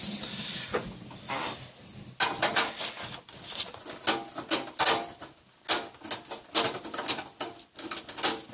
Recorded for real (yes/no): yes